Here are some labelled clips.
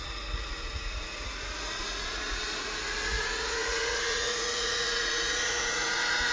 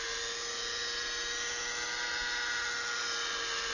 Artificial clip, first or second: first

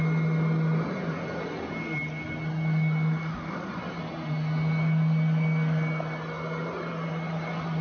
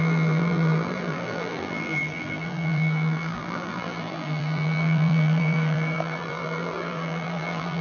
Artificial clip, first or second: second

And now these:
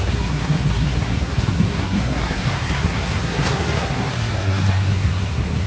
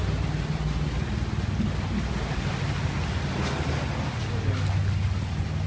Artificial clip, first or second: first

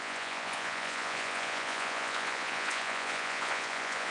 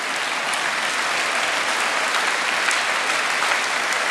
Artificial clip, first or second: first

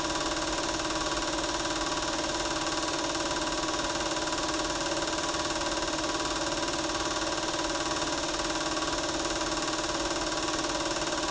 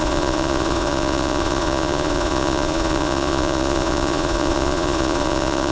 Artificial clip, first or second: second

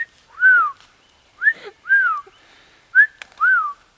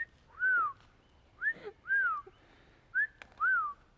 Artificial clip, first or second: first